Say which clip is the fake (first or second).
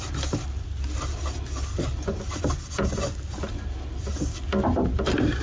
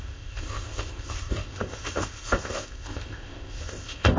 second